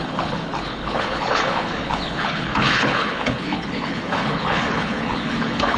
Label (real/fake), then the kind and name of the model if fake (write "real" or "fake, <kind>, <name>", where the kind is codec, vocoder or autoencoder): fake, codec, HILCodec